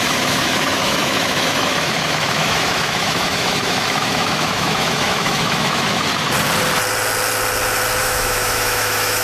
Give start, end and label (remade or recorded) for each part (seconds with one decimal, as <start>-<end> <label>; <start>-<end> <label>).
0.0-6.1 remade; 6.1-8.0 recorded; 8.0-9.2 remade